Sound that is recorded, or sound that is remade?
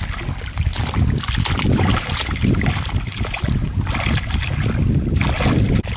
recorded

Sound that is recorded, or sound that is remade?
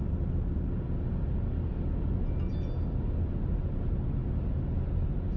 recorded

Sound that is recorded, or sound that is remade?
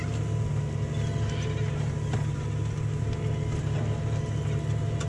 recorded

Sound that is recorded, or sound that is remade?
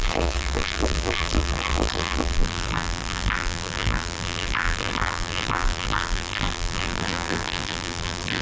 remade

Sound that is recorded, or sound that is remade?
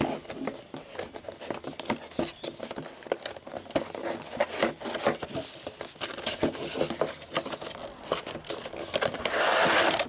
recorded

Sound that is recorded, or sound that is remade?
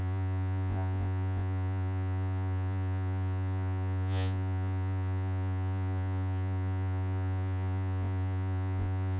remade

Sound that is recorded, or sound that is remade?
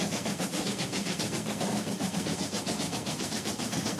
remade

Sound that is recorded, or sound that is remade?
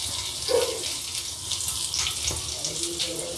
recorded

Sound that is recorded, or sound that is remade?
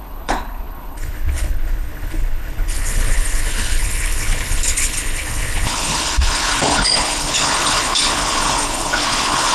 remade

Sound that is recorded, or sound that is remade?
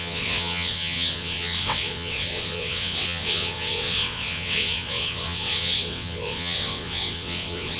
remade